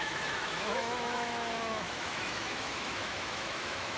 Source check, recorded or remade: remade